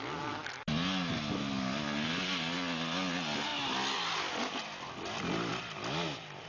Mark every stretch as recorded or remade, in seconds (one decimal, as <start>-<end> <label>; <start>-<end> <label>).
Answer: 0.0-6.5 recorded